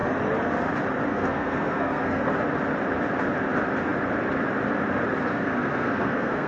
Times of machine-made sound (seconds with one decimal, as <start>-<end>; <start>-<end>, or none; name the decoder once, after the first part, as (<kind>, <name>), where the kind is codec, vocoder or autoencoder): 1.1-2.2 (codec, SNAC); 5.3-6.5